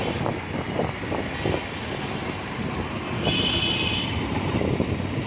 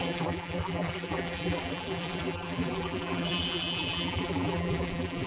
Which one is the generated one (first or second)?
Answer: second